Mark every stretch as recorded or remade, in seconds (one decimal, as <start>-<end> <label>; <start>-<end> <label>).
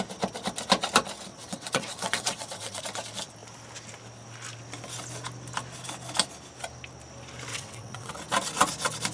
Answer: 0.0-1.3 recorded; 1.3-2.8 remade; 2.8-7.5 recorded; 7.5-8.1 remade; 8.1-9.1 recorded